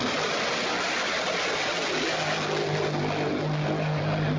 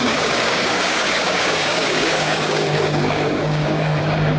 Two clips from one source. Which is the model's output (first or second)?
second